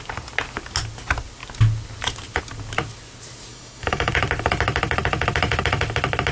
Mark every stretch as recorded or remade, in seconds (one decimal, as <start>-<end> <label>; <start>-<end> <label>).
0.0-3.5 recorded; 3.5-4.1 remade; 4.1-6.3 recorded

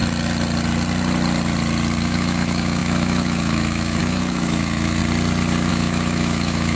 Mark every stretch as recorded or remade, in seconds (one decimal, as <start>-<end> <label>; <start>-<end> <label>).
0.0-2.0 recorded; 2.0-5.0 remade; 5.0-5.7 recorded; 5.7-6.8 remade